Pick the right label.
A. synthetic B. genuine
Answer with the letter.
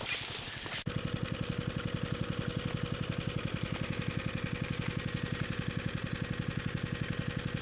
B